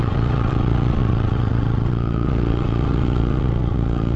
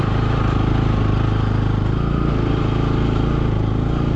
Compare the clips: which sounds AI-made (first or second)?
first